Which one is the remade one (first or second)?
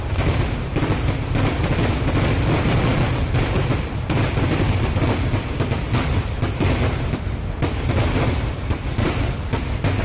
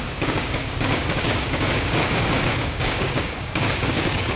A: second